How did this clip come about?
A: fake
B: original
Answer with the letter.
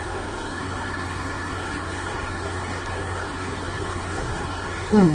A